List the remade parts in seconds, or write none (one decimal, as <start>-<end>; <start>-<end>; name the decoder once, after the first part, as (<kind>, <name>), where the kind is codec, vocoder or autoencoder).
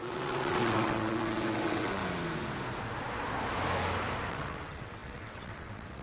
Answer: 0.0-2.0 (vocoder, WaveNeXt); 4.3-6.0